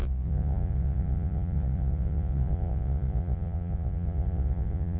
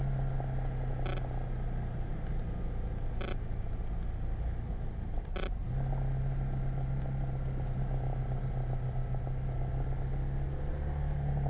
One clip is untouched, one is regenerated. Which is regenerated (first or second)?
first